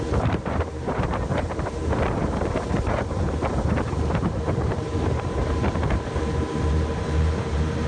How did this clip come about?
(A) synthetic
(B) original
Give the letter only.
A